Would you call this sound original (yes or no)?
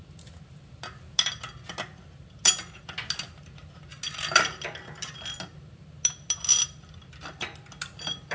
yes